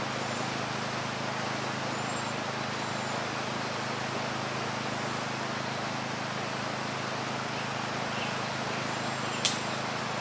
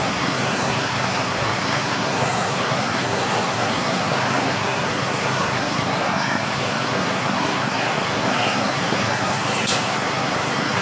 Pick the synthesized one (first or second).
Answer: second